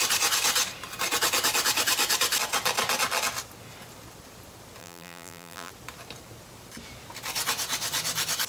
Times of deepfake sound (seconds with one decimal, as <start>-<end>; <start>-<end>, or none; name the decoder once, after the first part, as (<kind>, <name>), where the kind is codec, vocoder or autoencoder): 4.8-5.7 (vocoder, BigVGAN v2)